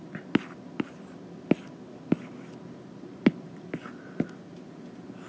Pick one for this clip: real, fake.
real